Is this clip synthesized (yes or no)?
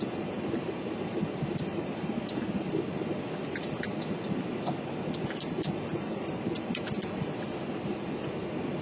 no